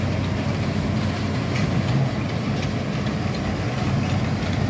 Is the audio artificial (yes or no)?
no